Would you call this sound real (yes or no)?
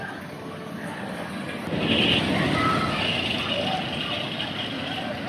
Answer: yes